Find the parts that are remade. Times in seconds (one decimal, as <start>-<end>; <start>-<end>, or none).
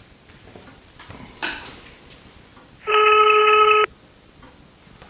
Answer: none